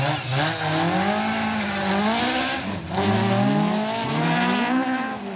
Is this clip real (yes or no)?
yes